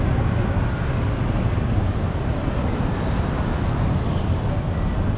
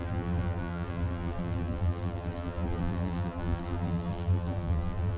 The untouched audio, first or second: first